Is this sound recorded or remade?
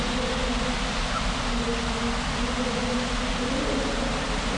recorded